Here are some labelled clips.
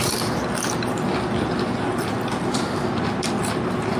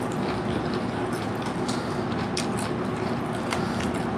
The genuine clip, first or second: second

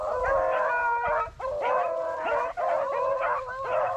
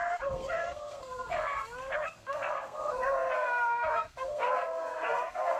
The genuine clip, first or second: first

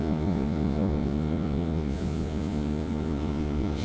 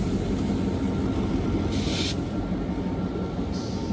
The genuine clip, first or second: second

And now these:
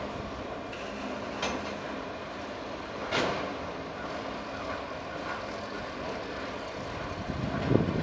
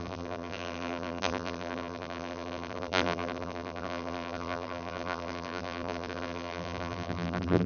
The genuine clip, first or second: first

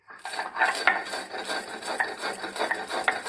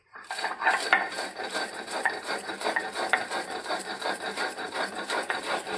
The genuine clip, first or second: first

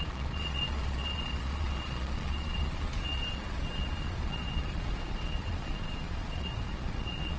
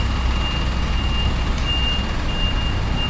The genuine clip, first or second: second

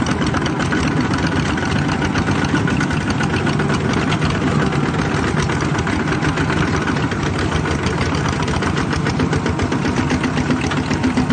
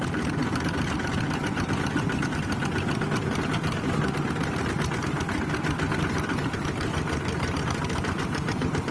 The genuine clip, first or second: first